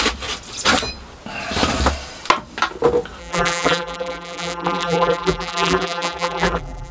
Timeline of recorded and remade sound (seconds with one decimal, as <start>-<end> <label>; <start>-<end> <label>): 0.0-3.2 recorded; 3.2-6.9 remade